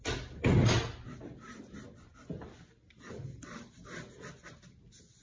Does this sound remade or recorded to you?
recorded